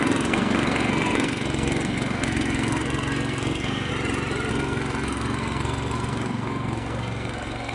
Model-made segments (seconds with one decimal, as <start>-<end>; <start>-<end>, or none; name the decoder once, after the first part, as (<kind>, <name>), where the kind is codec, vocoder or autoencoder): 0.0-3.9 (codec, SNAC); 4.5-7.7